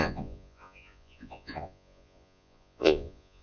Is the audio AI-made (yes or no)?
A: yes